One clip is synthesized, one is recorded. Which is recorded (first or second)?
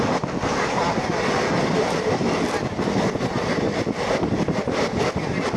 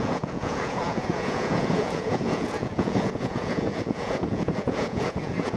first